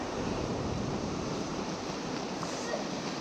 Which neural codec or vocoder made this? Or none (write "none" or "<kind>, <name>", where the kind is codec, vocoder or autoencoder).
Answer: vocoder, BigVGAN v2